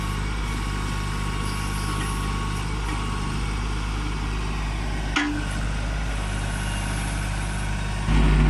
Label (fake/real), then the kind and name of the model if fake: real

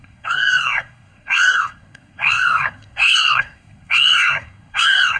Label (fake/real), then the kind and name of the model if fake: fake, codec, SNAC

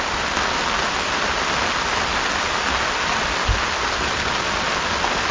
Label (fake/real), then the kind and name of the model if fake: real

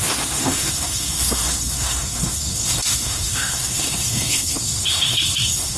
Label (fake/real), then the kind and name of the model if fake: fake, codec, SNAC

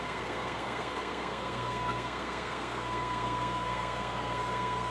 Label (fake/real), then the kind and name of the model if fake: fake, codec, SNAC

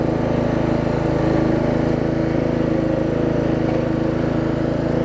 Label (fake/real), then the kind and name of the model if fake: real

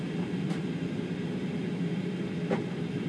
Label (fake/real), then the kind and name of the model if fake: real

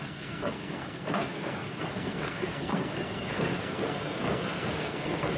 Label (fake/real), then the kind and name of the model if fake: fake, codec, SNAC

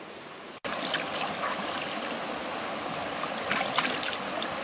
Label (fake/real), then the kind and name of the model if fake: real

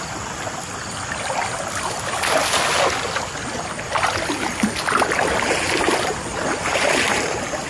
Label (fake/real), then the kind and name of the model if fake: real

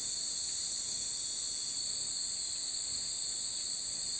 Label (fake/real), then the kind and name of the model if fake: real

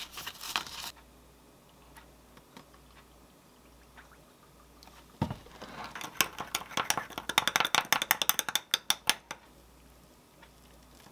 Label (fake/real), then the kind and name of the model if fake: real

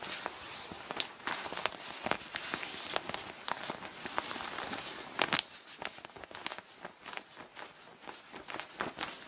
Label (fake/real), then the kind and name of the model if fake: real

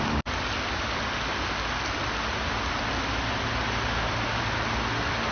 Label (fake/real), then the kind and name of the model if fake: real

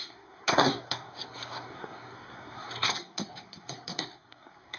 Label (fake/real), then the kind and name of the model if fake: fake, codec, SNAC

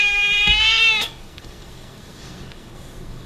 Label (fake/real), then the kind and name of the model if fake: fake, codec, SNAC